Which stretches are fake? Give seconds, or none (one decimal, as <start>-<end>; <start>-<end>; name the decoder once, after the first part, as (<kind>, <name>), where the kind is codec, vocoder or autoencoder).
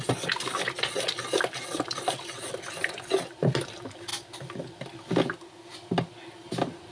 none